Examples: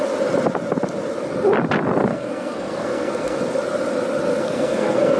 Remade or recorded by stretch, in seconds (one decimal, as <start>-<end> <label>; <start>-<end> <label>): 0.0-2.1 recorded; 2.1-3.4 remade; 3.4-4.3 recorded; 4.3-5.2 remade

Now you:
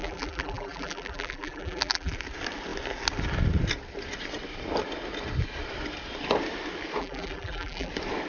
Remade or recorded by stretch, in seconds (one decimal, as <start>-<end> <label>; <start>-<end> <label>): 0.0-2.1 remade; 2.1-7.0 recorded; 7.0-7.9 remade; 7.9-8.3 recorded

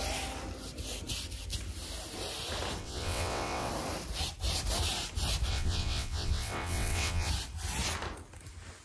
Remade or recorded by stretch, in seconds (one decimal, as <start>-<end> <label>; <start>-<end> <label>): 0.0-2.8 recorded; 2.8-3.7 remade; 3.7-5.5 recorded; 5.5-7.3 remade; 7.3-8.8 recorded

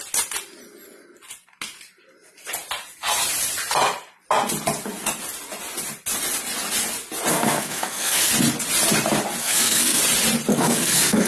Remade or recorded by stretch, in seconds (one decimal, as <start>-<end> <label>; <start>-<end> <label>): 0.0-7.3 recorded; 7.3-8.3 remade; 8.3-9.4 recorded; 9.4-10.0 remade; 10.0-10.5 recorded; 10.5-11.3 remade

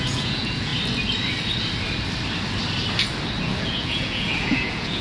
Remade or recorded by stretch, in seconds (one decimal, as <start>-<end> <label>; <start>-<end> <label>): 0.0-0.7 remade; 0.7-3.4 recorded; 3.4-5.0 remade

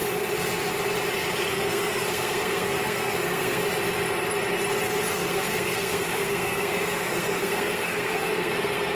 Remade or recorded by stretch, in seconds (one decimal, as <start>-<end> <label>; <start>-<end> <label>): 0.0-1.5 recorded; 1.5-3.6 remade; 3.6-5.1 recorded; 5.1-8.9 remade

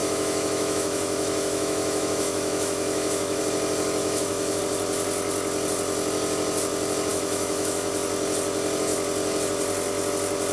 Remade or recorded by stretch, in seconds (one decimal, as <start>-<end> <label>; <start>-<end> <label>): 0.0-3.4 remade; 3.4-4.0 recorded; 4.0-4.6 remade; 4.6-7.1 recorded; 7.1-7.9 remade; 7.9-10.5 recorded

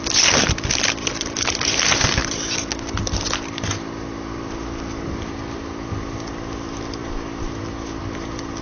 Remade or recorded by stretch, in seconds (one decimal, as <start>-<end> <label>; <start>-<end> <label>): 0.0-8.6 recorded